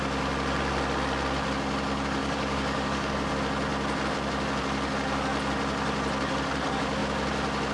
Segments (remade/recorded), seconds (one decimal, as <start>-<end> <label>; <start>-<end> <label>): 0.0-2.2 recorded; 2.2-3.3 remade; 3.3-7.7 recorded